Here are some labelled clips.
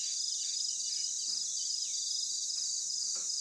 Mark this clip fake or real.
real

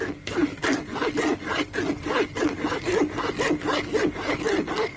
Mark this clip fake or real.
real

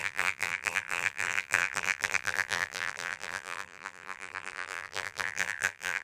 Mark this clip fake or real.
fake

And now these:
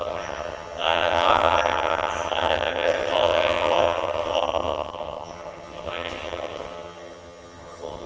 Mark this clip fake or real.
fake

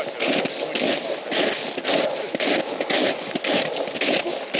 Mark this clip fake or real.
real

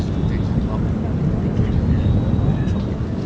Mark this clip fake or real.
real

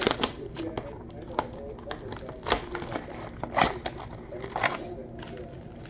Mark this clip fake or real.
real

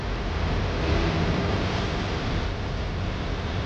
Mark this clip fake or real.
real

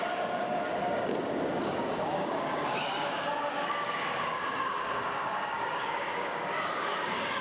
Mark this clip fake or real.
fake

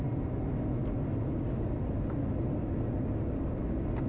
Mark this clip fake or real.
real